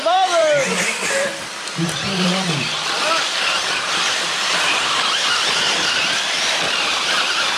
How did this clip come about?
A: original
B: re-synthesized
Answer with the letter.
B